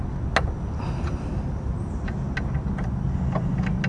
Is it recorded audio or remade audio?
recorded